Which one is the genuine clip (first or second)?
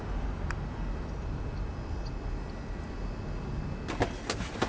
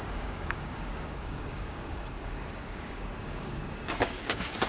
first